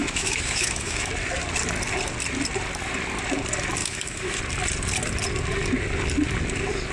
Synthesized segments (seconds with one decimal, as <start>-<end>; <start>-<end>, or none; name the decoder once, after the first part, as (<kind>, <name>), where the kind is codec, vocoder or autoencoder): 0.0-1.1 (autoencoder, DAC-VAE); 3.8-4.4